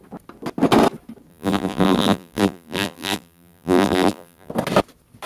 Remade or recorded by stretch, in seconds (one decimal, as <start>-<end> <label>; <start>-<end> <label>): 0.0-1.3 recorded; 1.3-4.5 remade; 4.5-5.3 recorded